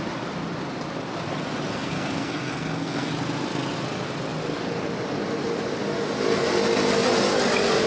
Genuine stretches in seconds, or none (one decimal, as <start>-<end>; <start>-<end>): 0.0-1.7; 3.1-7.9